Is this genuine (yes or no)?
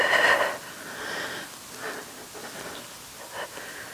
yes